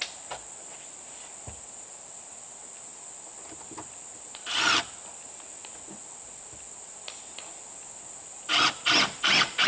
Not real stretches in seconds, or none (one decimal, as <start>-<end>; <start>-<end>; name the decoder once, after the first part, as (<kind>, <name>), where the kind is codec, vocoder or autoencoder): none